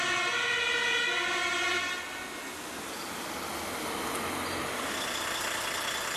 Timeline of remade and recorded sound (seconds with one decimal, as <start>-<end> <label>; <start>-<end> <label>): 0.0-6.2 recorded